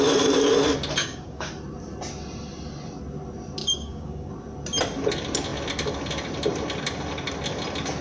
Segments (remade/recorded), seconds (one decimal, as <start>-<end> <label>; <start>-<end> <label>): 0.0-1.0 recorded; 1.0-1.5 remade; 1.5-3.6 recorded; 3.6-4.3 remade; 4.3-8.0 recorded